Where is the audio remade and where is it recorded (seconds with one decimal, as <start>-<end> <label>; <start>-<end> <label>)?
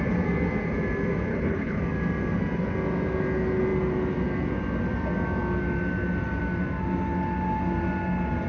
0.0-1.3 recorded; 1.3-1.8 remade; 1.8-8.5 recorded